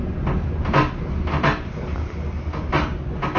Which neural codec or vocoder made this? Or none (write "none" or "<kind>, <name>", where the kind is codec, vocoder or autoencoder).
none